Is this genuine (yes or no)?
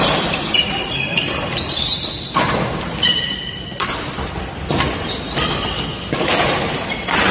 yes